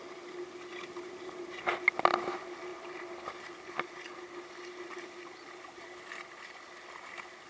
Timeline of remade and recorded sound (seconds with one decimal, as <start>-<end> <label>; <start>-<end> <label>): 0.0-7.5 recorded